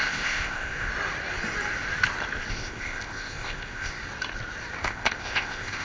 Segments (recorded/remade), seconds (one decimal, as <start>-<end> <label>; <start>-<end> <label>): 0.0-0.9 remade; 0.9-2.5 recorded; 2.5-4.0 remade; 4.0-4.8 recorded; 4.8-5.8 remade